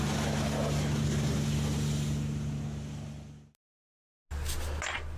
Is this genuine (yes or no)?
yes